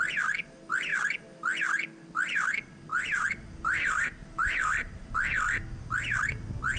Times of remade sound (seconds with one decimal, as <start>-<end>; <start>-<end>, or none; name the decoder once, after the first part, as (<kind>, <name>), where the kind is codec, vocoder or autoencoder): 2.9-5.1 (vocoder, BigVGAN v2)